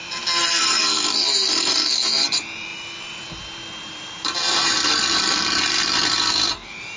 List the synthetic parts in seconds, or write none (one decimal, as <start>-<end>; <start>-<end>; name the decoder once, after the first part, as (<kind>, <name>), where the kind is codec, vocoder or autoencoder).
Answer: 0.0-7.0 (vocoder, BigVGAN v2)